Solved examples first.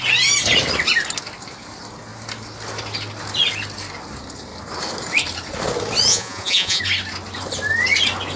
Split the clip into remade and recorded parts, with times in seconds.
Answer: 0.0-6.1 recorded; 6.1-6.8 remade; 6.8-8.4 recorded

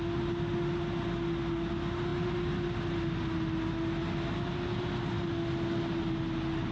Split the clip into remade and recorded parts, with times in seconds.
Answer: 0.0-6.7 recorded

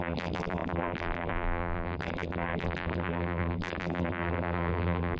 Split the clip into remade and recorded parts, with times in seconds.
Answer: 0.0-5.2 remade

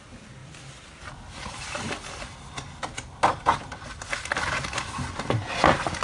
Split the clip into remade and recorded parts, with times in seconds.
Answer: 0.0-6.0 recorded

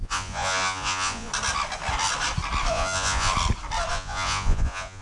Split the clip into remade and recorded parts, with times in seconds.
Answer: 0.0-1.3 remade; 1.3-2.7 recorded; 2.7-3.3 remade; 3.3-3.9 recorded; 3.9-5.0 remade

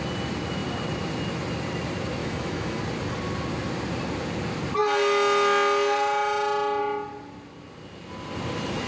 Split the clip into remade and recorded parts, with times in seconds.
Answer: 0.0-2.2 recorded; 2.2-2.8 remade; 2.8-8.9 recorded

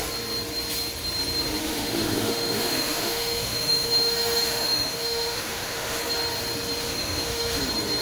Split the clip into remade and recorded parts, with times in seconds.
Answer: 0.0-1.6 recorded; 1.6-6.0 remade; 6.0-6.8 recorded; 6.8-7.6 remade; 7.6-8.0 recorded

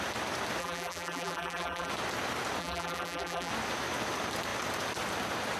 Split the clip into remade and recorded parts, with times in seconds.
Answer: 0.0-0.6 recorded; 0.6-1.9 remade; 1.9-2.6 recorded; 2.6-3.5 remade; 3.5-5.6 recorded